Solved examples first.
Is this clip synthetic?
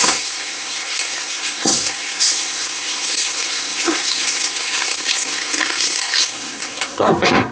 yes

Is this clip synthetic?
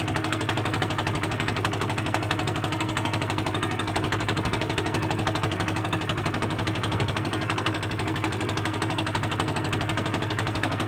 yes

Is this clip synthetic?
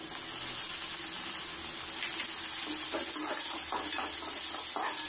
no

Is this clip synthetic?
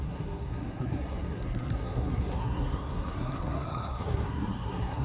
yes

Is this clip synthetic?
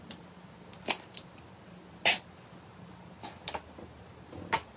no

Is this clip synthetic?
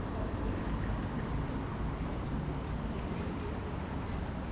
no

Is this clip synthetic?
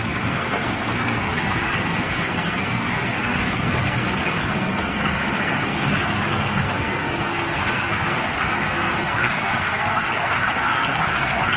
yes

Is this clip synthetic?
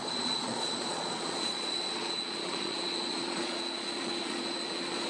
yes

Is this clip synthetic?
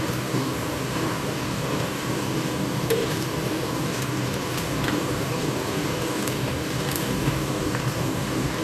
yes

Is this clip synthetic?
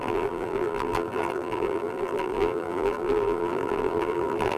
yes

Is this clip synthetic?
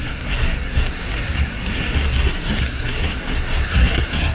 yes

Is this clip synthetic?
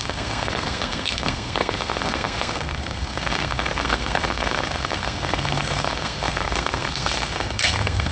yes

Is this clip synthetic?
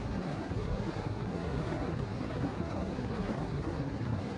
yes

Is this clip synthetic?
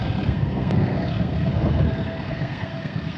yes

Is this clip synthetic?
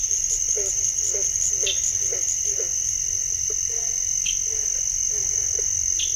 no